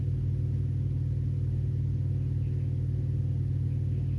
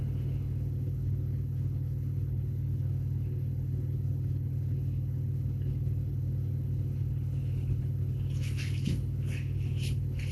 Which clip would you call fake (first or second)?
second